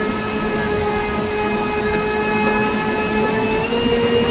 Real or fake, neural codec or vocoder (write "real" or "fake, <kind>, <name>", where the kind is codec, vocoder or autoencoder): real